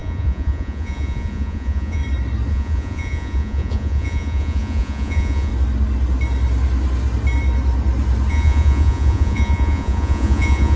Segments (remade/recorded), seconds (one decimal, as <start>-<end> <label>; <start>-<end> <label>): 0.0-2.0 remade; 2.0-2.5 recorded; 2.5-5.5 remade; 5.5-8.3 recorded; 8.3-10.8 remade